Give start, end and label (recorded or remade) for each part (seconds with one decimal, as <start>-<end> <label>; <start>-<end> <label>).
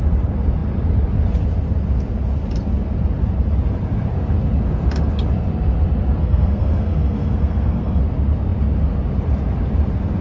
0.0-6.2 recorded; 6.2-8.0 remade; 8.0-10.2 recorded